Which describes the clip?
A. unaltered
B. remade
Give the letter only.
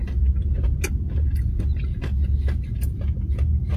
A